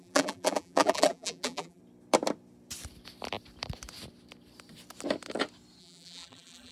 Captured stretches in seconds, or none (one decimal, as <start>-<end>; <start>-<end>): 1.8-5.8